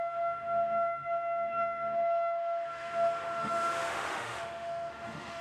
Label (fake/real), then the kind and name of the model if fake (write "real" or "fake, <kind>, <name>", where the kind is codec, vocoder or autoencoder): fake, autoencoder, DAC-VAE